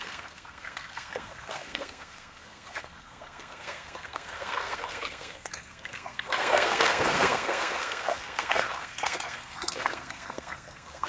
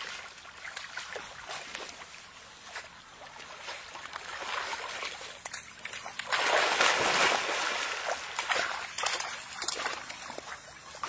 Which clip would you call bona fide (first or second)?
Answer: second